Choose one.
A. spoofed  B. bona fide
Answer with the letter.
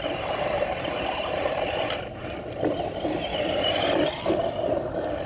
A